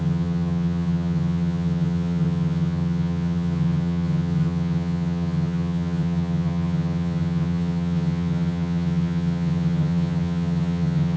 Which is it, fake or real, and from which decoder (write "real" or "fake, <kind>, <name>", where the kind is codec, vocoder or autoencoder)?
fake, vocoder, HiFi-GAN